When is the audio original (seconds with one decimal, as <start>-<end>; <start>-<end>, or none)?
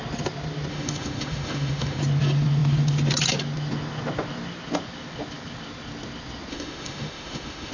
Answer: 0.0-0.7; 2.0-6.5